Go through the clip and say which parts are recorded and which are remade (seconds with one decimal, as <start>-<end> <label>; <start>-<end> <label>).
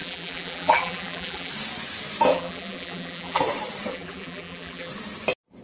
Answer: 0.0-1.5 remade; 1.5-2.3 recorded; 2.3-3.4 remade; 3.4-3.9 recorded; 3.9-4.9 remade; 4.9-5.6 recorded